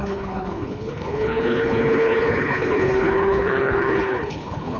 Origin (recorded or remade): remade